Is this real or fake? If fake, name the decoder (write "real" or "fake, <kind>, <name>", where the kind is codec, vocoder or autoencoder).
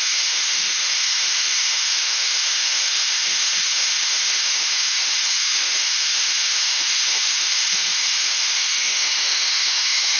fake, autoencoder, DAC-VAE